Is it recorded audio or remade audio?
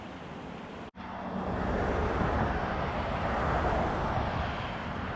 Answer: recorded